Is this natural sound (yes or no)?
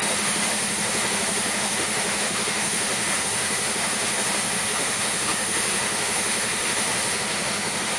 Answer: no